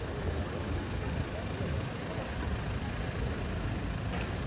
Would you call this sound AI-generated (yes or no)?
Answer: no